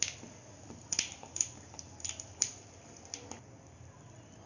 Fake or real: real